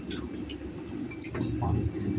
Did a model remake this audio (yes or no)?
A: no